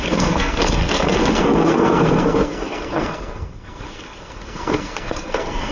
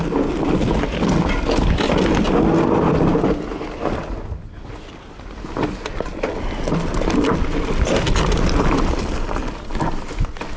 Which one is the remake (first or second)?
first